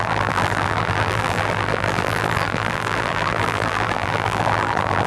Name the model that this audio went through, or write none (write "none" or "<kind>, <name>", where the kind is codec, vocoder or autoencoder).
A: vocoder, BigVGAN v2